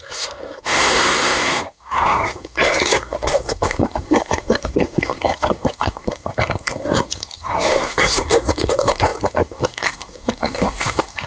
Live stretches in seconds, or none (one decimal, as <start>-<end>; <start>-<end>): none